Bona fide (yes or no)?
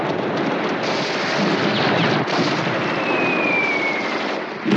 yes